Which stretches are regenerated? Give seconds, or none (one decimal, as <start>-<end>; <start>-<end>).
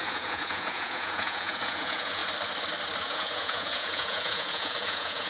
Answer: 0.0-2.2; 3.0-5.3